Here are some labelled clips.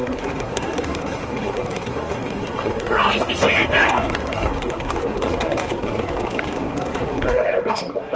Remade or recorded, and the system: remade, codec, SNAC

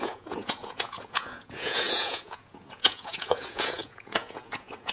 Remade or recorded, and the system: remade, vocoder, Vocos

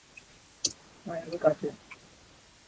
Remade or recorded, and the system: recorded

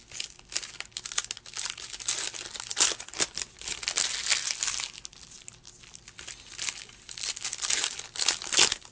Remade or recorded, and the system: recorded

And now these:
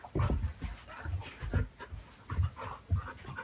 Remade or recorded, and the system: recorded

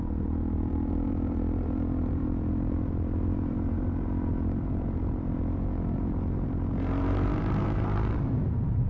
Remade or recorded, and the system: remade, vocoder, BigVGAN v2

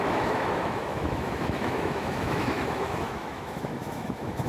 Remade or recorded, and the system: remade, autoencoder, DAC-VAE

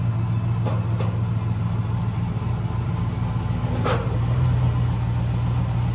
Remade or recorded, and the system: recorded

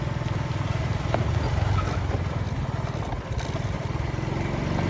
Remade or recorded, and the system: recorded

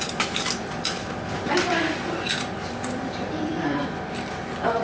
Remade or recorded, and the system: remade, vocoder, BigVGAN v2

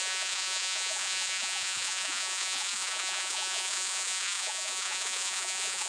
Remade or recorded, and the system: remade, vocoder, Vocos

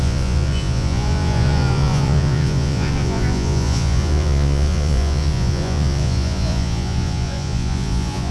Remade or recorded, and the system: remade, vocoder, Vocos